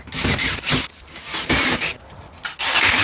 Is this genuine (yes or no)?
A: yes